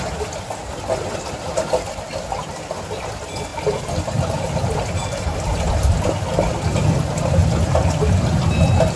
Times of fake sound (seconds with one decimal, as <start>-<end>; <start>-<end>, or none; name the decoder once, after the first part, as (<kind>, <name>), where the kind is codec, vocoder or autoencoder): 0.0-3.5 (vocoder, BigVGAN v2); 4.7-9.0